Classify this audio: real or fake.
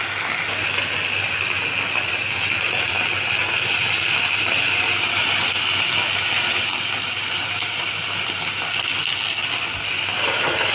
real